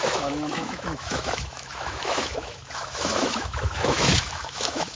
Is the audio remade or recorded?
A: remade